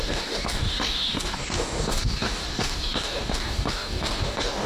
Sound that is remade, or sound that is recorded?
remade